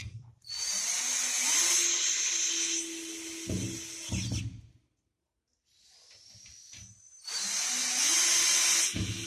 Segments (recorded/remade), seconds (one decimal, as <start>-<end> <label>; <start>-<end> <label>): 0.0-0.9 remade; 0.9-9.3 recorded